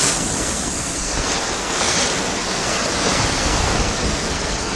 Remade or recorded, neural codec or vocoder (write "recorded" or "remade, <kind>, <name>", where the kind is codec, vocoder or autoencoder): remade, codec, SNAC